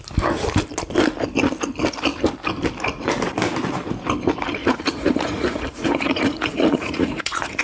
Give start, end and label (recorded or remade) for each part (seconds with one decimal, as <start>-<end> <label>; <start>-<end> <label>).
0.0-4.6 recorded; 4.6-7.6 remade